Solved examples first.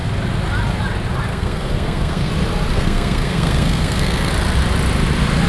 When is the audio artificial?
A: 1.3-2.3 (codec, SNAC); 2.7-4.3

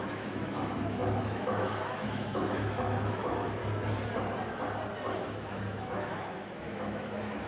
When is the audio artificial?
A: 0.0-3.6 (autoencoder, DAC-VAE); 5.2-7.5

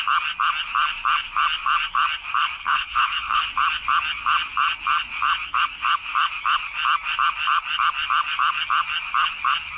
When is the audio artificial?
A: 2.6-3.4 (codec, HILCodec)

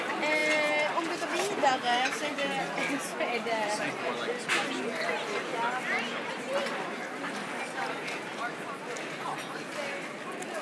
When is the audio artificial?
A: none